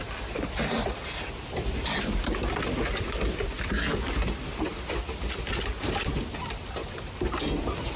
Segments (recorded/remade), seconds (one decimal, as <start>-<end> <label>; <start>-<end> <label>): 0.0-8.0 recorded